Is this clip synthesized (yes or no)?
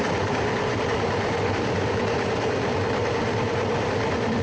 yes